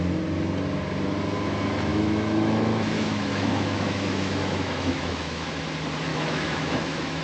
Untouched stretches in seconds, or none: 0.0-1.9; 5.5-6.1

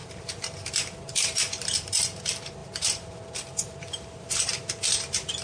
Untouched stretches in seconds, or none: 2.2-2.6; 4.5-5.4

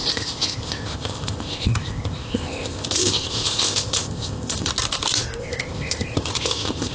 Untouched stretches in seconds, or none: 4.7-5.4

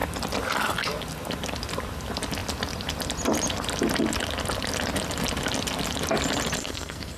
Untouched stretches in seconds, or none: 0.0-6.6

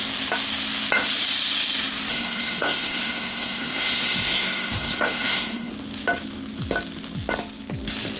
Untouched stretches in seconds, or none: 0.0-2.1; 5.7-8.2